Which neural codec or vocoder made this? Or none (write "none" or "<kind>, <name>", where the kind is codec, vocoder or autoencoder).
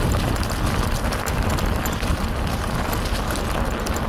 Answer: none